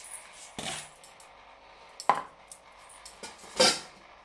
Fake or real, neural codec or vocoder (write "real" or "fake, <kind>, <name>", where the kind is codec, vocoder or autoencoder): real